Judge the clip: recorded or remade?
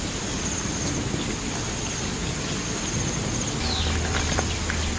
recorded